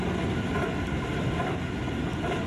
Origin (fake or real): real